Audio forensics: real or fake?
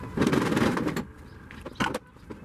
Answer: real